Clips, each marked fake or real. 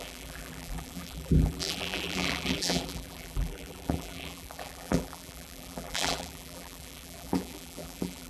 fake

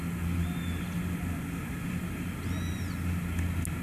real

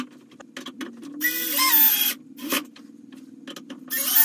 real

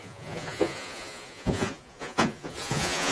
fake